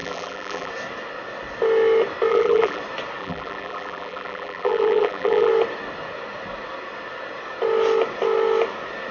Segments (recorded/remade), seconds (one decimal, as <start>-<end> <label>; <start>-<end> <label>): 0.0-0.7 remade; 0.7-2.3 recorded; 2.3-2.8 remade; 2.8-3.2 recorded; 3.2-5.5 remade; 5.5-9.1 recorded